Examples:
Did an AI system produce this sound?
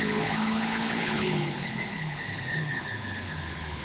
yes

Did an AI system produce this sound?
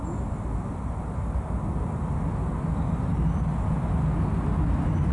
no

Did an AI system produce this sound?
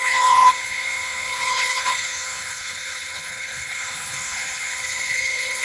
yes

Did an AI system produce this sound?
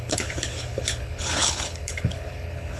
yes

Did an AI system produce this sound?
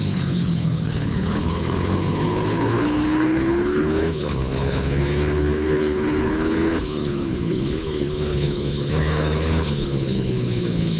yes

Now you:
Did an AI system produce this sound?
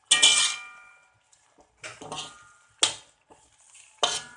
no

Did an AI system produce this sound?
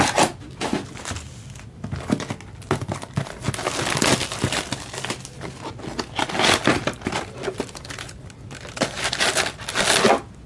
no